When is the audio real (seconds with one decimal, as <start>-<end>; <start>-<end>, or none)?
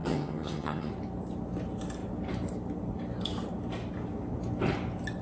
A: 0.9-5.2